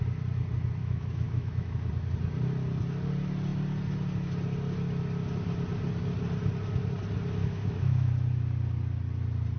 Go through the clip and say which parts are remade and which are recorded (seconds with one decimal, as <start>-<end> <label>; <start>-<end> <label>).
0.0-0.8 recorded; 0.8-1.9 remade; 1.9-7.4 recorded; 7.4-8.1 remade; 8.1-9.6 recorded